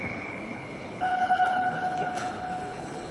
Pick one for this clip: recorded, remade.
remade